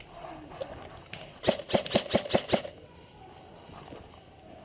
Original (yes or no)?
yes